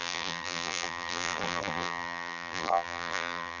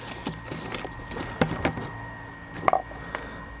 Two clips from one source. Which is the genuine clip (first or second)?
second